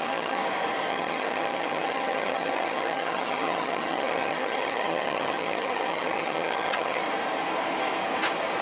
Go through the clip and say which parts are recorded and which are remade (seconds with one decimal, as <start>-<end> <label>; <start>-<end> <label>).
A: 0.0-0.4 remade; 0.4-0.9 recorded; 0.9-7.0 remade; 7.0-8.6 recorded